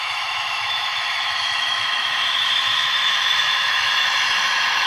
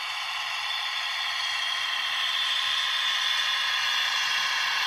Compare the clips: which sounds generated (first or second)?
first